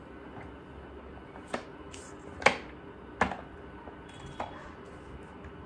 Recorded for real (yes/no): yes